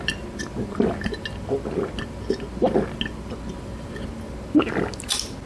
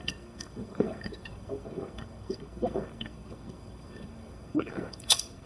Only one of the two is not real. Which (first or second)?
second